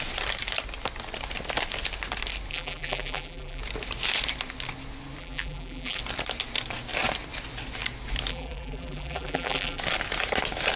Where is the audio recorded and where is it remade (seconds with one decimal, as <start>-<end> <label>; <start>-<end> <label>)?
0.0-2.5 recorded; 2.5-3.6 remade; 3.6-5.2 recorded; 5.2-6.0 remade; 6.0-8.3 recorded; 8.3-9.8 remade; 9.8-10.8 recorded